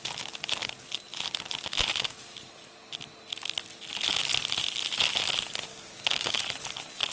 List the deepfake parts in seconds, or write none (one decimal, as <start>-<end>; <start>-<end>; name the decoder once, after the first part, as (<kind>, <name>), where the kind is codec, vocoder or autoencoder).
5.7-6.4 (codec, DAC)